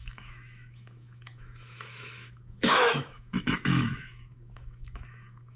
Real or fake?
fake